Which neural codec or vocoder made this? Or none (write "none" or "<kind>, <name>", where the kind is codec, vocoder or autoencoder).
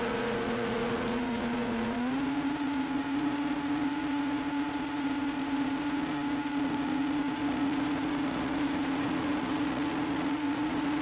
vocoder, Vocos